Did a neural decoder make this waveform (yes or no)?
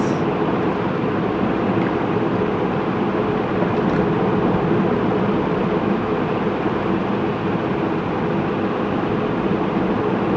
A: no